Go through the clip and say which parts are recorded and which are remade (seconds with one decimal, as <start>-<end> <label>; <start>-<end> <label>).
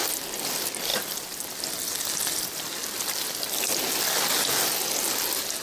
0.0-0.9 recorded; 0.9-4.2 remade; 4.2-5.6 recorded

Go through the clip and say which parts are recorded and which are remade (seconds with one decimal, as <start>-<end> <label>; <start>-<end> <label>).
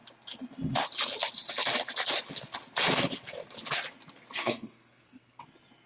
0.0-4.4 recorded; 4.4-5.4 remade; 5.4-5.9 recorded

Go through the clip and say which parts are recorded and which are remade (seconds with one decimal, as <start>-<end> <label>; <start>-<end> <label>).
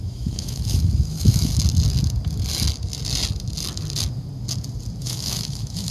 0.0-1.5 remade; 1.5-5.0 recorded; 5.0-5.9 remade